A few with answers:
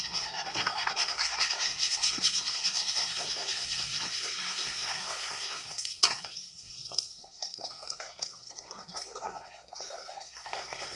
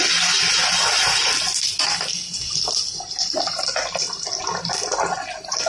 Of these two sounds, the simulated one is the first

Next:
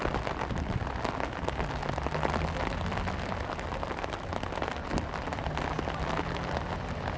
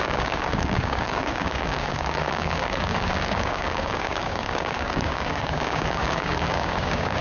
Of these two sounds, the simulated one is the second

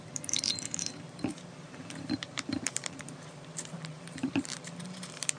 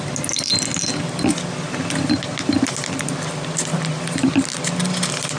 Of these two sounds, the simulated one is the first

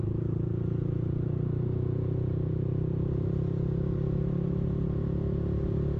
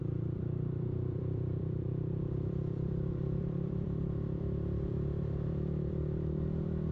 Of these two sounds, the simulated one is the second